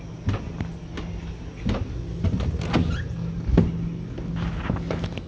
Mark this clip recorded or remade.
recorded